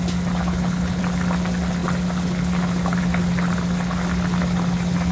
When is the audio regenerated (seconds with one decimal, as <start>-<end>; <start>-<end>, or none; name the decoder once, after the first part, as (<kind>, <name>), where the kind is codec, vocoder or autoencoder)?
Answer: 0.4-1.0 (codec, HILCodec)

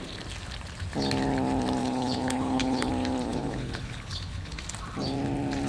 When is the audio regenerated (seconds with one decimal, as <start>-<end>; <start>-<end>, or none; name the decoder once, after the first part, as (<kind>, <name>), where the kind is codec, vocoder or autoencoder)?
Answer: 1.8-2.9 (codec, HILCodec); 3.3-4.6